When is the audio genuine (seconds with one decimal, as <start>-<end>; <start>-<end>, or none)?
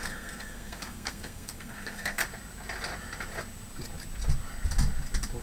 2.2-5.4